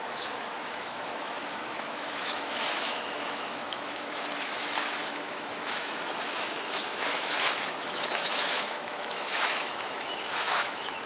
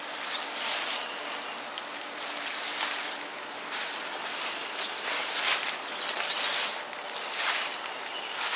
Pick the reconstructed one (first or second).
first